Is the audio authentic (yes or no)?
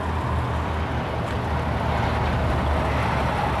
yes